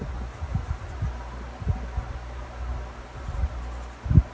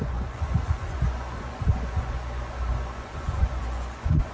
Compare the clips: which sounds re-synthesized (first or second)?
second